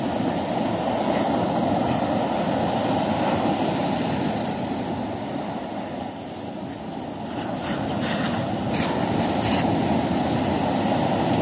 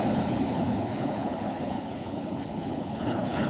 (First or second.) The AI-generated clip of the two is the second